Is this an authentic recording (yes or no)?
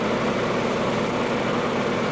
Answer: yes